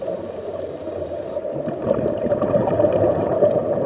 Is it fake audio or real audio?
fake